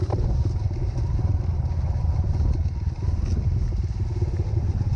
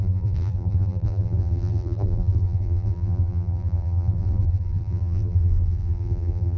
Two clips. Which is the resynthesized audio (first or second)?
second